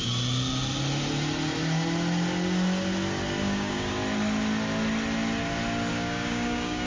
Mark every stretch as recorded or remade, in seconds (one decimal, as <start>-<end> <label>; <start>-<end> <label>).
0.0-3.4 recorded; 3.4-3.9 remade; 3.9-5.9 recorded; 5.9-6.9 remade